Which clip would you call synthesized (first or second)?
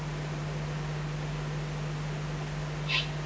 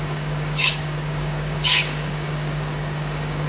second